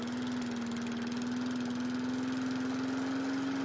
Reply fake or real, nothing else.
real